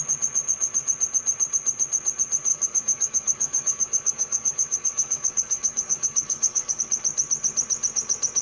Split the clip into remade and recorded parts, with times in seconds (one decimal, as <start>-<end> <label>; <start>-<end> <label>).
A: 0.0-2.5 recorded; 2.5-6.8 remade; 6.8-8.4 recorded